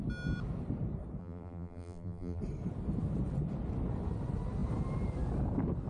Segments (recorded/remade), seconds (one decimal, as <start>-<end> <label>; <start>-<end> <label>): 0.0-1.2 recorded; 1.2-2.4 remade; 2.4-5.9 recorded